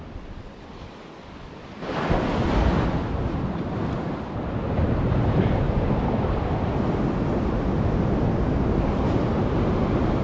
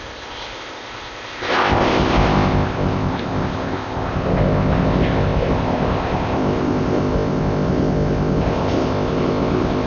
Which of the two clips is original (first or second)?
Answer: first